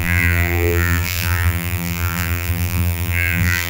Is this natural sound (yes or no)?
no